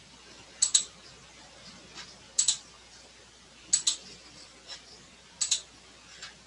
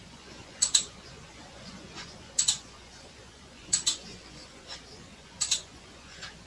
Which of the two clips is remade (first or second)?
second